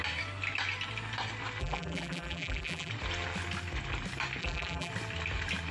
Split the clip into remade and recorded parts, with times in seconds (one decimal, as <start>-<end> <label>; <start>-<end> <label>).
0.0-1.6 recorded; 1.6-2.9 remade; 2.9-4.4 recorded; 4.4-4.9 remade; 4.9-5.7 recorded